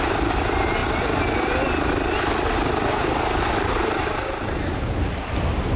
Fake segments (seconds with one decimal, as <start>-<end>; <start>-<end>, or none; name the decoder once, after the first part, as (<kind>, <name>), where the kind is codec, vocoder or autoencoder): none